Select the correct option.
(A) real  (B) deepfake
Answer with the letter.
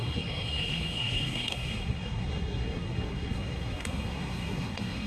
B